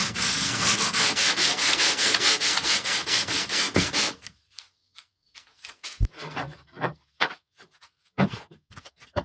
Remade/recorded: remade